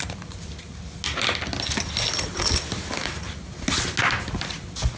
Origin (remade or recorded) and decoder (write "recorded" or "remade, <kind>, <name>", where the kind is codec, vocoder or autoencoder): recorded